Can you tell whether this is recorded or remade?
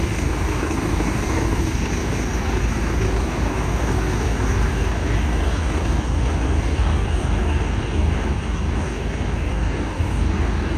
remade